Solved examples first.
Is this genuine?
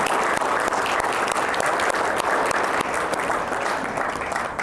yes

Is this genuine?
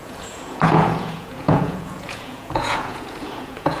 no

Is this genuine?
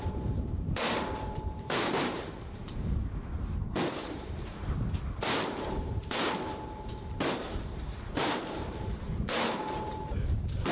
no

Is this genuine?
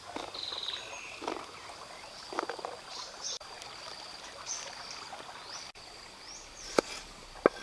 yes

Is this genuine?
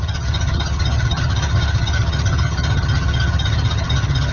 no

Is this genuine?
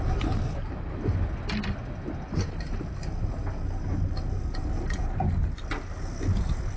yes